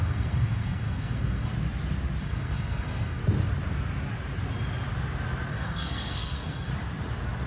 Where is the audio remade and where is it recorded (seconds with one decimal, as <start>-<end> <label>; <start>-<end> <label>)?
0.0-1.5 remade; 1.5-2.2 recorded; 2.2-3.2 remade; 3.2-5.5 recorded; 5.5-6.7 remade; 6.7-7.5 recorded